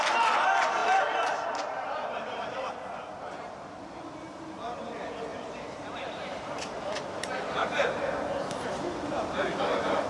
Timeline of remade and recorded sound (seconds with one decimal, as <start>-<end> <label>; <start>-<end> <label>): 0.0-0.8 recorded; 0.8-2.7 remade; 2.7-5.3 recorded; 5.3-7.0 remade; 7.0-10.1 recorded